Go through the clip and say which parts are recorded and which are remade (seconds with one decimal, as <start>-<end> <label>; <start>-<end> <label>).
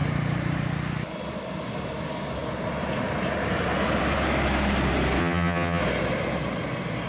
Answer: 0.0-5.2 recorded; 5.2-5.8 remade; 5.8-7.1 recorded